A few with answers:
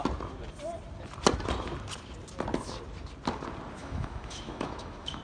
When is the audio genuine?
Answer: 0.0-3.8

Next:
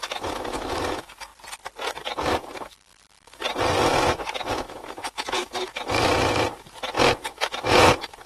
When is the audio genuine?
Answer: 1.3-1.9

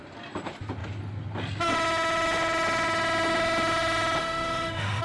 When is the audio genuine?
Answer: 0.0-4.2

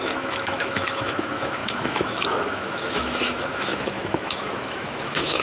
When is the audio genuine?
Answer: none